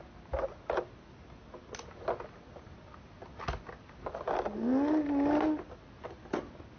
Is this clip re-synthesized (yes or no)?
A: no